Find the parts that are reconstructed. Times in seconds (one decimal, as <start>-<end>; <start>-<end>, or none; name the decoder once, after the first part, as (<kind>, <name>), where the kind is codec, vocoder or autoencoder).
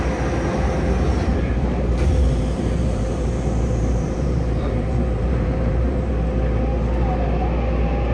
1.3-6.1 (vocoder, BigVGAN v2)